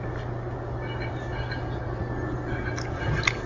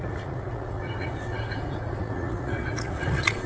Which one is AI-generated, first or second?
second